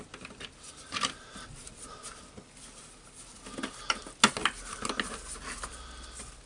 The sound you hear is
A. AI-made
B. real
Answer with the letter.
B